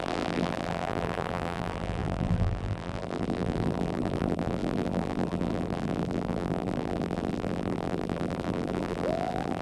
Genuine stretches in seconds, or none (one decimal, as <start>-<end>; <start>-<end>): none